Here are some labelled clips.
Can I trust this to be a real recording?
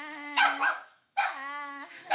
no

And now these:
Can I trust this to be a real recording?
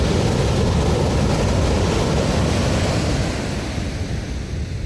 yes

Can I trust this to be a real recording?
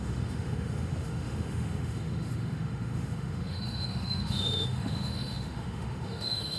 no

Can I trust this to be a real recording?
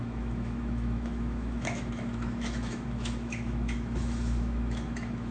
no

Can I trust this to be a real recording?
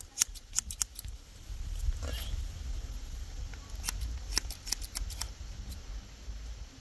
yes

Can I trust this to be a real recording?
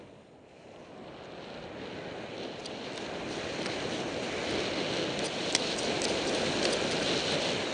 yes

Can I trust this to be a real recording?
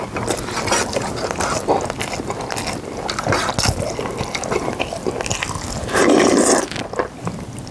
yes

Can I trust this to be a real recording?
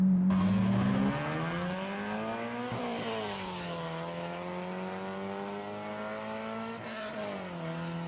yes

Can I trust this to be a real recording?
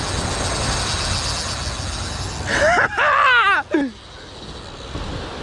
yes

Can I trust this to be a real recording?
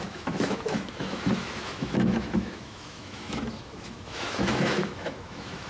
no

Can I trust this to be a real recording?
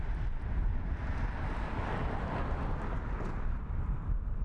yes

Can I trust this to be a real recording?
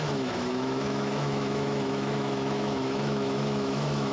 no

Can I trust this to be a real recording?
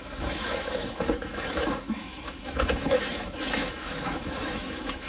no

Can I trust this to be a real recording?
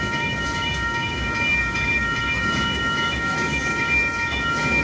no